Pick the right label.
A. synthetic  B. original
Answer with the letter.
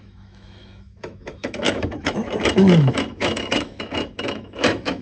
A